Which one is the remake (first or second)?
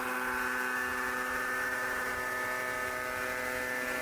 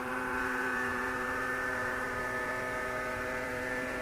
second